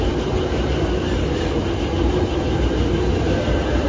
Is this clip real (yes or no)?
yes